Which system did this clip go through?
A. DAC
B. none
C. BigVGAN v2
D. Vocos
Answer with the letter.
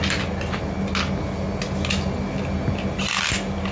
B